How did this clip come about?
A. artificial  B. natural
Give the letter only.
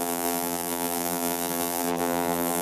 A